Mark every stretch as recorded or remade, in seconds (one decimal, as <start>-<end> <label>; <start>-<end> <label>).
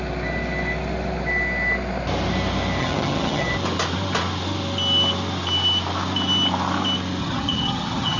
0.0-2.8 recorded; 2.8-3.5 remade; 3.5-7.2 recorded; 7.2-8.2 remade